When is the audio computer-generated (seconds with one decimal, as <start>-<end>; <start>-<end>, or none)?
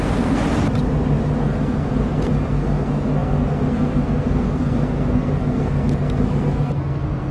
0.0-0.4; 1.4-7.3